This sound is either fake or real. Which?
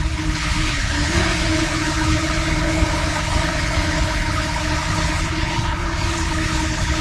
fake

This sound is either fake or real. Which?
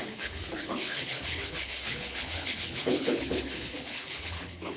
fake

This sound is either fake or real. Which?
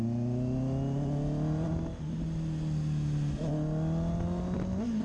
real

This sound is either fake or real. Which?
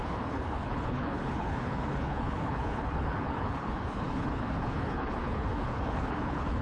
fake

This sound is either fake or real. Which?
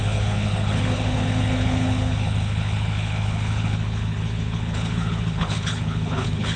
fake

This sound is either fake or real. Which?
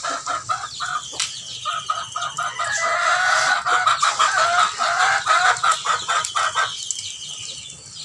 real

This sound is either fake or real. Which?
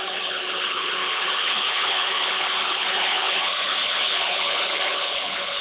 fake